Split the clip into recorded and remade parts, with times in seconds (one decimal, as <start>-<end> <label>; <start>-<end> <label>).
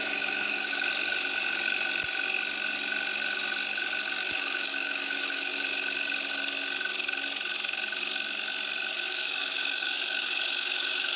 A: 0.0-0.9 remade; 0.9-4.3 recorded; 4.3-5.5 remade; 5.5-8.9 recorded; 8.9-11.2 remade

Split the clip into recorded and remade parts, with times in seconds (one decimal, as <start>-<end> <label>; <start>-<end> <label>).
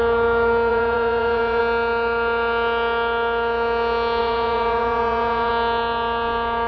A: 0.0-0.7 recorded; 0.7-1.6 remade; 1.6-4.2 recorded; 4.2-5.5 remade; 5.5-6.7 recorded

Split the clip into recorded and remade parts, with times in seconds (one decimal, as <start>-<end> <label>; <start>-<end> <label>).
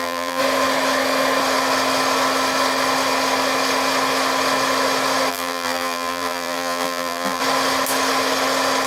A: 0.0-0.4 remade; 0.4-5.3 recorded; 5.3-7.4 remade; 7.4-8.9 recorded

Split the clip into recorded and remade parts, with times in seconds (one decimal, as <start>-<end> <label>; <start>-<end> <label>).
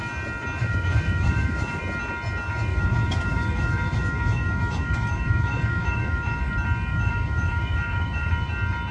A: 0.0-0.6 recorded; 0.6-1.8 remade; 1.8-2.7 recorded; 2.7-6.5 remade; 6.5-6.9 recorded; 6.9-8.3 remade; 8.3-8.9 recorded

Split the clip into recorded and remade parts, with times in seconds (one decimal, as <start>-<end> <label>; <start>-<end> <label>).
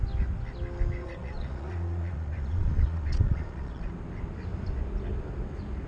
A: 0.0-1.0 recorded; 1.0-3.9 remade; 3.9-5.9 recorded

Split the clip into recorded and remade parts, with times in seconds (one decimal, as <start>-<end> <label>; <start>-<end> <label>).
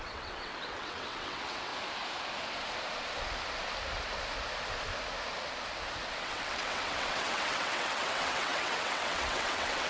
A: 0.0-1.7 remade; 1.7-6.2 recorded; 6.2-9.9 remade